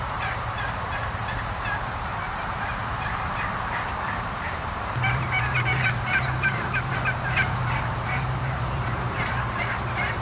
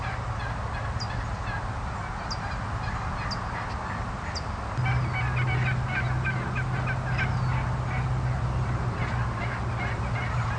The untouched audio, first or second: second